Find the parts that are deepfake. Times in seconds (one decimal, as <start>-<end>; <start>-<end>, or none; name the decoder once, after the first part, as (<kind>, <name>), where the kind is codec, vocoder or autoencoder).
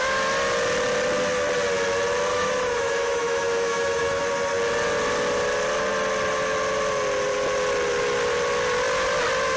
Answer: 2.3-4.2 (autoencoder, DAC-VAE)